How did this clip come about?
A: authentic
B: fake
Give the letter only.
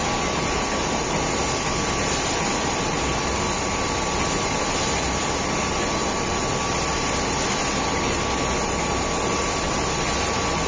A